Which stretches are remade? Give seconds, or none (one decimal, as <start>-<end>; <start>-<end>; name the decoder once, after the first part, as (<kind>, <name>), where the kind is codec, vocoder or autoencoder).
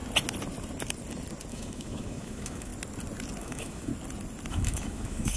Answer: 1.5-2.7 (autoencoder, DAC-VAE); 3.4-3.9; 4.5-5.4